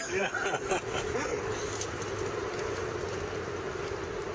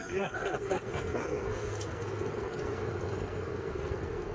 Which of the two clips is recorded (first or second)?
first